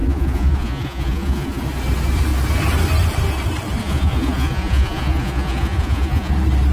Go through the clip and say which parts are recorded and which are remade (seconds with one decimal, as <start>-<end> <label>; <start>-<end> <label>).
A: 0.0-1.6 remade; 1.6-3.8 recorded; 3.8-6.3 remade; 6.3-6.7 recorded